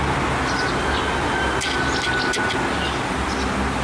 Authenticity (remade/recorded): recorded